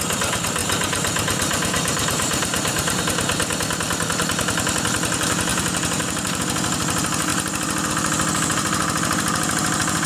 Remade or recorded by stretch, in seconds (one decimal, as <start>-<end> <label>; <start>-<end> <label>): 0.0-0.6 recorded; 0.6-3.0 remade; 3.0-5.5 recorded; 5.5-6.4 remade; 6.4-10.1 recorded